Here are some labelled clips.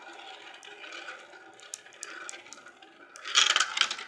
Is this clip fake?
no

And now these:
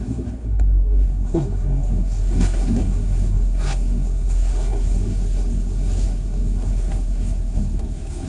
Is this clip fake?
yes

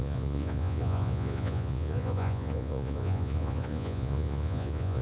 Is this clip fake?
yes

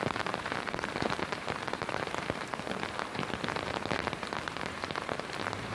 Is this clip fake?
yes